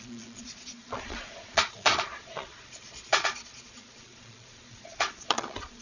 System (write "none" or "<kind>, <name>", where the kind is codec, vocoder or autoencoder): vocoder, Vocos